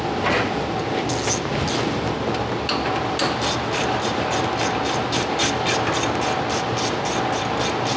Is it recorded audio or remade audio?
recorded